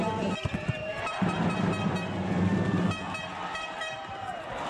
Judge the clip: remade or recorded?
recorded